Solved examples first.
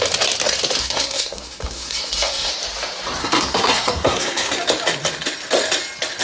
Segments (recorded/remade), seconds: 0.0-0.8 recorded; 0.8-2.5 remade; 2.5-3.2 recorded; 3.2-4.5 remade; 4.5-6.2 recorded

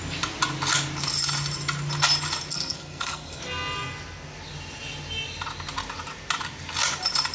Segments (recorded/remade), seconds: 0.0-2.5 recorded; 2.5-3.4 remade; 3.4-7.3 recorded